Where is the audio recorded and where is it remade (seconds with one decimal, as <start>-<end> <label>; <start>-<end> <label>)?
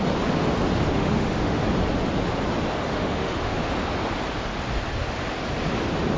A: 0.0-0.9 recorded; 0.9-1.6 remade; 1.6-2.9 recorded; 2.9-3.7 remade; 3.7-6.2 recorded